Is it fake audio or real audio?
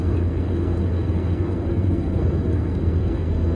fake